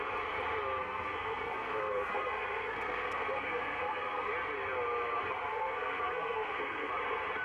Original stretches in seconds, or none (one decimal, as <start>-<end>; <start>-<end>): 0.0-0.8; 4.3-5.5; 6.9-7.4